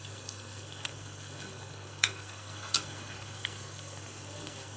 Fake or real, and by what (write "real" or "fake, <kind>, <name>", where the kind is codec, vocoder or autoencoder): fake, codec, SNAC